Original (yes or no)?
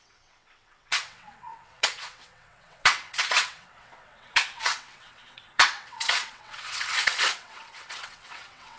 no